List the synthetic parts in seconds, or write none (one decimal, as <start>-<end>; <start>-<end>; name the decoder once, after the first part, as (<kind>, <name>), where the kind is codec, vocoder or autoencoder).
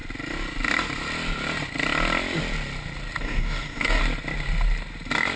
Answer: 3.2-4.0 (codec, DAC)